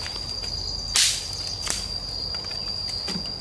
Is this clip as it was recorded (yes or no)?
yes